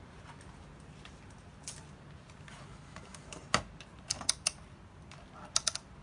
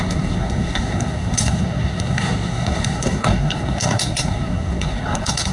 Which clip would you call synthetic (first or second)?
second